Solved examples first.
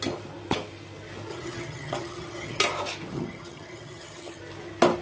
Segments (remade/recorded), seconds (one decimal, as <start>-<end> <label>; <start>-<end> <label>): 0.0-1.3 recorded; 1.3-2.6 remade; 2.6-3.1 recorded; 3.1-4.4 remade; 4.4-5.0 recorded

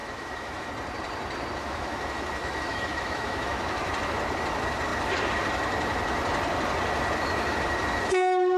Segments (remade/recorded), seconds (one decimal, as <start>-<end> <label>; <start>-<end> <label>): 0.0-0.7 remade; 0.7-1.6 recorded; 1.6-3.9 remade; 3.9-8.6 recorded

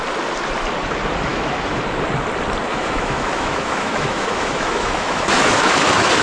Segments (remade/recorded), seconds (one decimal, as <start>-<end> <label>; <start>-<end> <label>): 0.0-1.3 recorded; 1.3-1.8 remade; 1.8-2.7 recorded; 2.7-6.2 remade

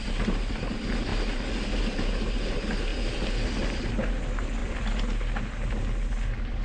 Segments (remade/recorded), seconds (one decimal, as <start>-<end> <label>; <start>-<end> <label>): 0.0-6.6 recorded

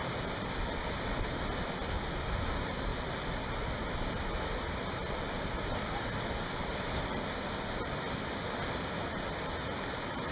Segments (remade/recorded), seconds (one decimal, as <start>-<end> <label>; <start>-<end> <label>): 0.0-10.3 recorded

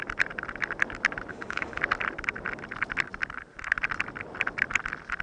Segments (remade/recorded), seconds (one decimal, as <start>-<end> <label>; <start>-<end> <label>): 0.0-1.3 recorded; 1.3-1.8 remade; 1.8-5.2 recorded

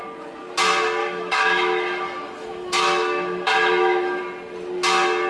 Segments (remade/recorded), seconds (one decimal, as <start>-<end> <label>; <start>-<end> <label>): 0.0-1.0 recorded; 1.0-4.2 remade; 4.2-5.3 recorded

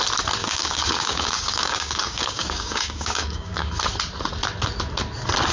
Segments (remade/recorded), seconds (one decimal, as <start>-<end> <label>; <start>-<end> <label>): 0.0-0.4 recorded; 0.4-3.7 remade; 3.7-5.5 recorded